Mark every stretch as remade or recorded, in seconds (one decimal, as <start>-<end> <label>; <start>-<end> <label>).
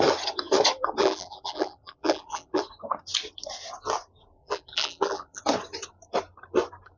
0.0-1.0 recorded; 1.0-2.6 remade; 2.6-4.4 recorded; 4.4-5.4 remade; 5.4-7.0 recorded